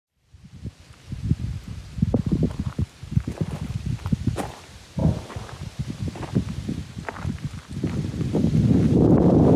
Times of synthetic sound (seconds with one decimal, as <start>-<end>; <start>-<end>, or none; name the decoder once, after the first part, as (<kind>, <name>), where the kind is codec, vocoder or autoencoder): 0.0-3.9 (vocoder, BigVGAN v2); 5.0-9.6